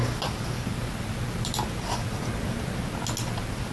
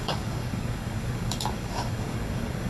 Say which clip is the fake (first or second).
second